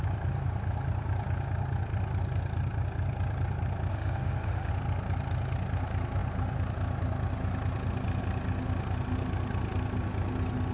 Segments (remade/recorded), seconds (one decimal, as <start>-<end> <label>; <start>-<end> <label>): 0.0-3.9 recorded; 3.9-4.7 remade; 4.7-10.7 recorded